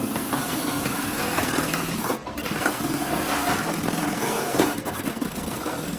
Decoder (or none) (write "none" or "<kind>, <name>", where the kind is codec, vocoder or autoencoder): codec, SNAC